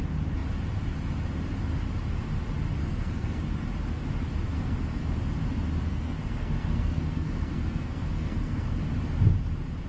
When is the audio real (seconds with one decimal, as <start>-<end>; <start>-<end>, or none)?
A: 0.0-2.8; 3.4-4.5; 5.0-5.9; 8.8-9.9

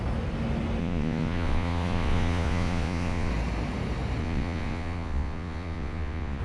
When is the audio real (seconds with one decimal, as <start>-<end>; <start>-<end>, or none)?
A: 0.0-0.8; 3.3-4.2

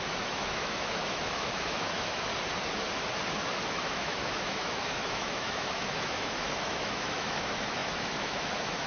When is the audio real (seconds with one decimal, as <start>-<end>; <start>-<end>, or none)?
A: 2.3-3.7

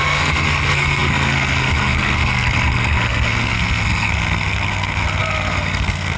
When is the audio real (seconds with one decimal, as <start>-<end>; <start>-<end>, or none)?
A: none